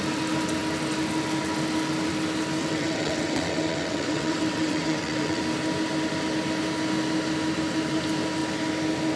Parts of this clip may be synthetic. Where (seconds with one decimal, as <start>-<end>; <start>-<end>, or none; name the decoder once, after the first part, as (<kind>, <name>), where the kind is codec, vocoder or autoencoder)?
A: 2.6-5.4 (vocoder, WaveNeXt)